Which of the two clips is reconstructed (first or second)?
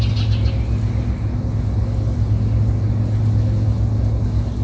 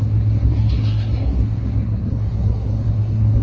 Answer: second